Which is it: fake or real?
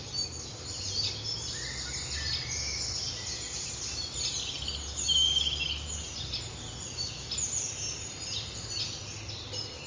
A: real